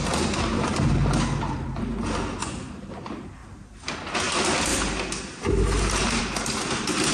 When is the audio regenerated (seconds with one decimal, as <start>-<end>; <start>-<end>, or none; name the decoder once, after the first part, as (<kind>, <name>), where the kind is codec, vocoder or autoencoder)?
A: none